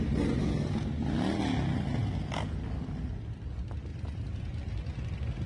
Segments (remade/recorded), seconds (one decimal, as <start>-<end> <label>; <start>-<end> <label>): 0.0-3.9 recorded; 3.9-4.6 remade; 4.6-5.5 recorded